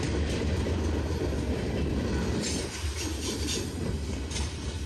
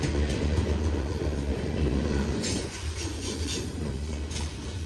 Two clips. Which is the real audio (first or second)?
first